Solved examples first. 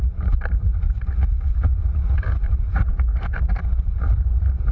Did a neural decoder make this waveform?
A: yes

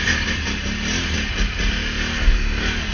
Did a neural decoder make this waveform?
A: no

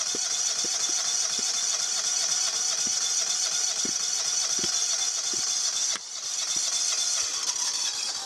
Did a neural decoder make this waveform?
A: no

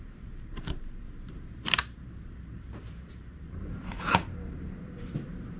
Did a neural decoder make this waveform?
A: yes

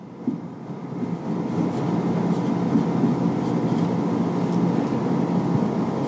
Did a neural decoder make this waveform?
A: no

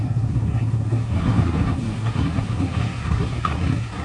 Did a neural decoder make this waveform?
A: yes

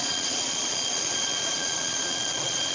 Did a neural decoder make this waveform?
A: yes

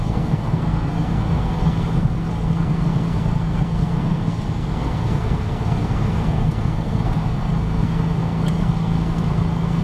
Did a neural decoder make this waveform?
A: yes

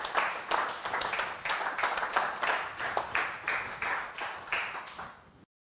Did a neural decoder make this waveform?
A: no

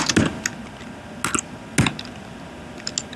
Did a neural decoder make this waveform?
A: no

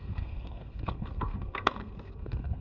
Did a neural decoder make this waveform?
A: yes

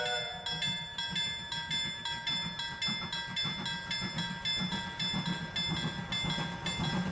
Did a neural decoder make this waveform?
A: no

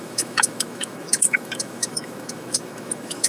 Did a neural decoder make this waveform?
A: yes